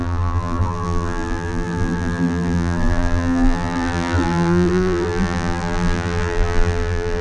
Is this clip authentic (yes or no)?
no